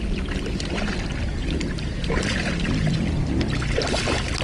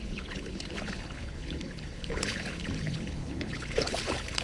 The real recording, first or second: first